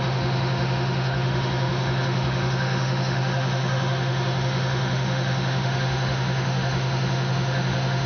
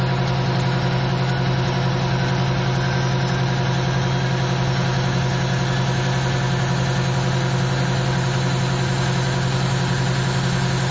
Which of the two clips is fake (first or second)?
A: first